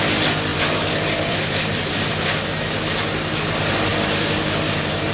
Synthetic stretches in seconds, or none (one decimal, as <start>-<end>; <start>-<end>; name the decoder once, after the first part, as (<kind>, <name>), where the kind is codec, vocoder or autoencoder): 0.5-2.2 (vocoder, BigVGAN v2); 3.9-5.1